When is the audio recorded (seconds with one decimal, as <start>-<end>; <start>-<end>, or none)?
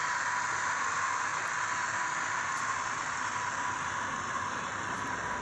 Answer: 0.0-5.4